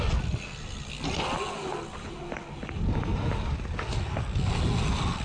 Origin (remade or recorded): recorded